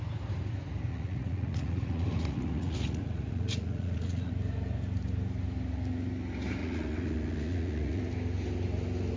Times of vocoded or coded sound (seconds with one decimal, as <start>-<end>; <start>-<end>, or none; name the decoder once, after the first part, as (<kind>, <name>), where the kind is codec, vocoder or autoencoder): 0.9-4.3 (vocoder, Vocos); 6.6-8.0